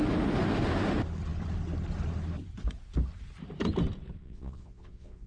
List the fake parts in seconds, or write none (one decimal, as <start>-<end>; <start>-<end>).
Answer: 4.2-5.3